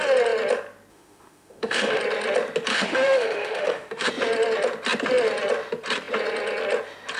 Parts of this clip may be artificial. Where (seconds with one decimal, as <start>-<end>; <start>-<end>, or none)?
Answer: 0.9-2.0; 2.7-4.1